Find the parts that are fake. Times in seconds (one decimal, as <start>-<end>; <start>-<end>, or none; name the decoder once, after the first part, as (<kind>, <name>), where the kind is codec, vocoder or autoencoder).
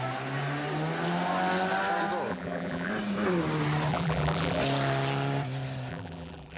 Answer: 2.3-2.9 (vocoder, BigVGAN v2); 3.9-4.6; 5.9-6.6